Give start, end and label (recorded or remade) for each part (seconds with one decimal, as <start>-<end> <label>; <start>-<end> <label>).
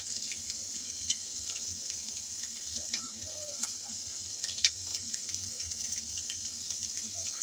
0.0-7.4 remade